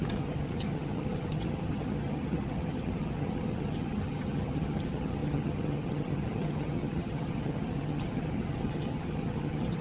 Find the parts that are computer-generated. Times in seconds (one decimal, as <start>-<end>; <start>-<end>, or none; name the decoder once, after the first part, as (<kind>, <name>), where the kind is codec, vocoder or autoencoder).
0.0-9.8 (vocoder, HiFi-GAN)